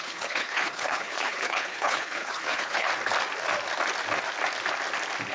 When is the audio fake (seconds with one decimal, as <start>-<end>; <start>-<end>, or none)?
0.0-2.9